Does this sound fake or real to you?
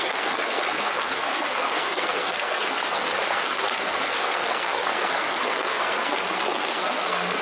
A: fake